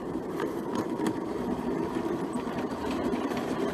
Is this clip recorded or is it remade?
remade